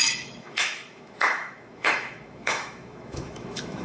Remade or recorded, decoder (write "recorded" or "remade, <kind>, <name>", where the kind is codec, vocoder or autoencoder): remade, autoencoder, DAC-VAE